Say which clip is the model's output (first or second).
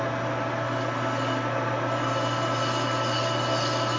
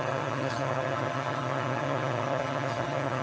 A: second